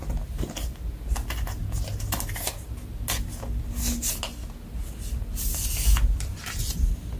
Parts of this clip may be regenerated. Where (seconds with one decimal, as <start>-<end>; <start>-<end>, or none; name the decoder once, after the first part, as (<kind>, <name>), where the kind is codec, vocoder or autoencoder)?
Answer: none